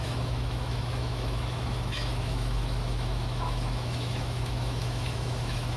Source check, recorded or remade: remade